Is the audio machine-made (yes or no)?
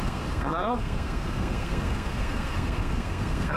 yes